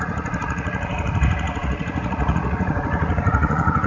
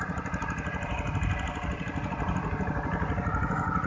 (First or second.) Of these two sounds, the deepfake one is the first